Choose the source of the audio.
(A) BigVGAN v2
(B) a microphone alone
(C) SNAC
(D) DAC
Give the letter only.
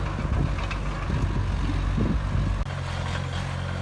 B